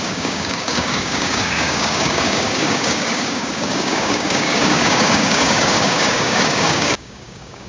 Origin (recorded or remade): remade